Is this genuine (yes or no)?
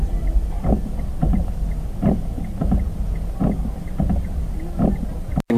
yes